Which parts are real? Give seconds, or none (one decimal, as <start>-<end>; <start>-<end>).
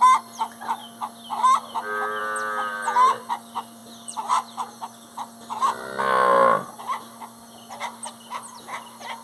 0.0-9.2